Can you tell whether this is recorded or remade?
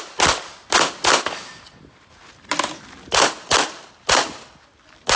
recorded